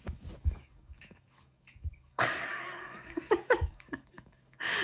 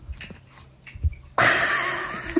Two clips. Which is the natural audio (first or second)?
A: second